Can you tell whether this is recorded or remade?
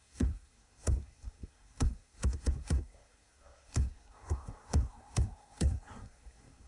remade